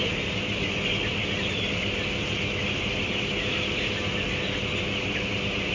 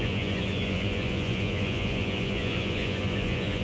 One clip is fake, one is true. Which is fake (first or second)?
second